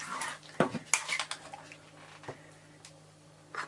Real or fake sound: real